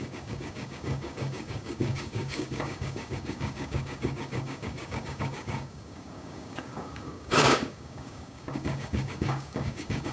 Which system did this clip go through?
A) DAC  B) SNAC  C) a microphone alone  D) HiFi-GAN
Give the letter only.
A